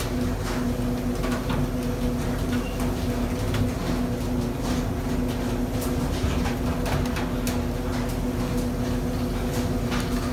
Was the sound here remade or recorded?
recorded